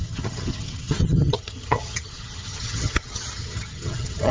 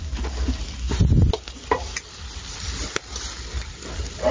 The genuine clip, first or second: second